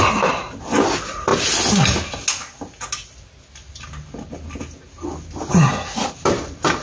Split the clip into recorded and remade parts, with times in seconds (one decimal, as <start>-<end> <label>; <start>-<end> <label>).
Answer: 0.0-6.8 recorded